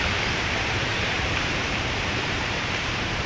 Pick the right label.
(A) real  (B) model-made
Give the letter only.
B